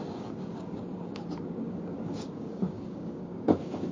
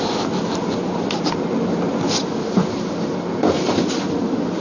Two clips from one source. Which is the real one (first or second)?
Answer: second